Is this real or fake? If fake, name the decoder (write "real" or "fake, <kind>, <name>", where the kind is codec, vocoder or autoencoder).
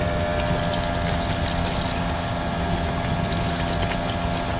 real